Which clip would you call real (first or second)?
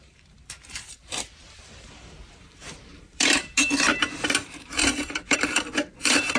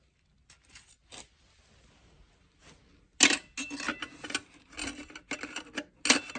second